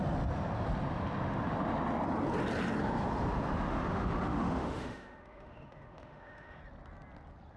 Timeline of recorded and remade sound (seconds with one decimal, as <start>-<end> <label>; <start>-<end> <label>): 0.0-3.7 recorded; 3.7-6.6 remade; 6.6-7.6 recorded